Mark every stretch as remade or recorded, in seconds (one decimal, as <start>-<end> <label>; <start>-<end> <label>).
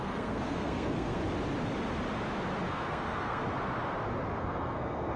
0.0-1.2 remade; 1.2-2.7 recorded; 2.7-3.4 remade; 3.4-4.4 recorded; 4.4-5.2 remade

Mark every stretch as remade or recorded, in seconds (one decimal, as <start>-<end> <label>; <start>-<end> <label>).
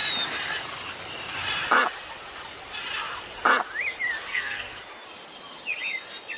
0.0-4.3 recorded; 4.3-4.8 remade; 4.8-6.4 recorded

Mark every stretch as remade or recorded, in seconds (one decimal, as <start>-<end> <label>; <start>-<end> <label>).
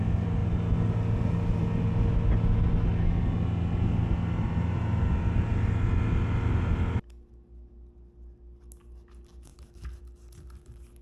0.0-11.0 recorded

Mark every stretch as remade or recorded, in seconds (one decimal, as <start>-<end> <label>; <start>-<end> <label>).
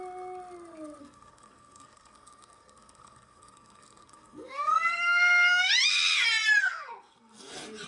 0.0-1.0 recorded; 1.0-5.7 remade; 5.7-6.6 recorded; 6.6-7.5 remade; 7.5-7.9 recorded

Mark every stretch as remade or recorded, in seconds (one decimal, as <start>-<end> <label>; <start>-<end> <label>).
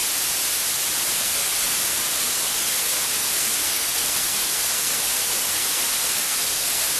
0.0-1.1 recorded; 1.1-7.0 remade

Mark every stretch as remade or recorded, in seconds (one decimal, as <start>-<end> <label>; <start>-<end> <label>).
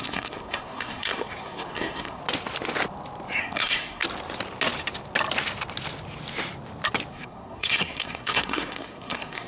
0.0-2.2 remade; 2.2-3.4 recorded; 3.4-4.0 remade; 4.0-7.1 recorded; 7.1-9.5 remade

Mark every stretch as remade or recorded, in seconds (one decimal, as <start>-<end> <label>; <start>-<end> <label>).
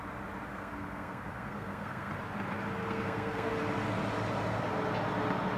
0.0-0.5 recorded; 0.5-2.1 remade; 2.1-2.8 recorded; 2.8-3.5 remade; 3.5-5.6 recorded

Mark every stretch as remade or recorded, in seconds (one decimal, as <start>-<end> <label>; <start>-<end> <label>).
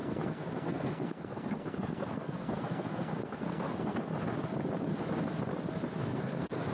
0.0-4.0 remade; 4.0-6.0 recorded; 6.0-6.7 remade